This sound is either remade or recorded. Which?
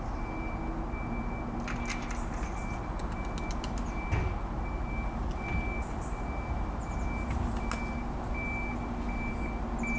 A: recorded